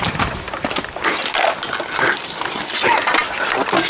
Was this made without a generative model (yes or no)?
yes